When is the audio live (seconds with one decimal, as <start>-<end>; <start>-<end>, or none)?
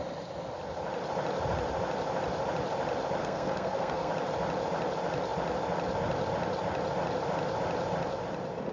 0.0-3.2; 4.1-8.7